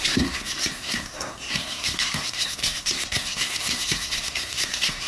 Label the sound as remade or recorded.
remade